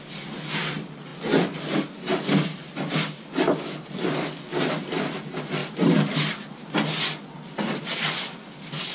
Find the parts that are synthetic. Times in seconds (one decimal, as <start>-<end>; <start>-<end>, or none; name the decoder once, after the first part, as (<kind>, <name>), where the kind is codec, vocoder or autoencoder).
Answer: none